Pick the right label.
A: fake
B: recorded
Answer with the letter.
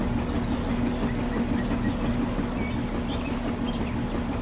B